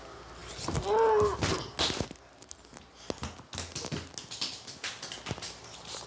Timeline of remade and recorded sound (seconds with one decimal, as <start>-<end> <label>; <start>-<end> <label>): 0.0-6.1 recorded